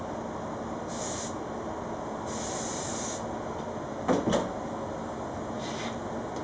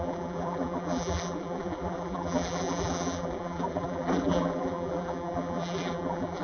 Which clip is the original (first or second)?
first